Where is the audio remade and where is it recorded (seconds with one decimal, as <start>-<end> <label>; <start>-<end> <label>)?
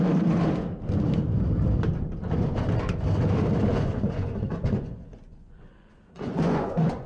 0.0-3.7 recorded; 3.7-7.1 remade